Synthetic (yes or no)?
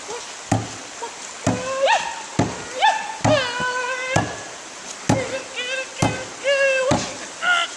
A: no